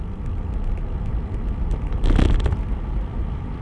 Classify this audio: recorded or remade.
recorded